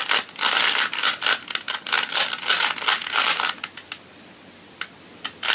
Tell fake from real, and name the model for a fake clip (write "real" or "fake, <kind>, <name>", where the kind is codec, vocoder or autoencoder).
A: real